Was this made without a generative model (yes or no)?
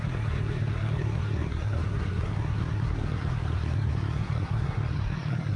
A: no